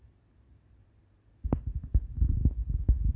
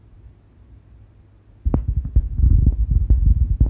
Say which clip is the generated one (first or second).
first